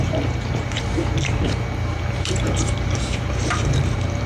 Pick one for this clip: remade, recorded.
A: remade